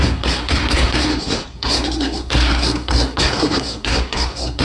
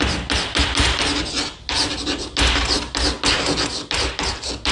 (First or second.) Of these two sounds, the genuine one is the second